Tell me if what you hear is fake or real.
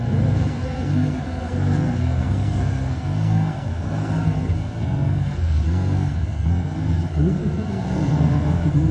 fake